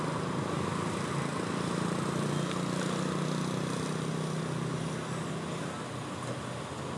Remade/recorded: recorded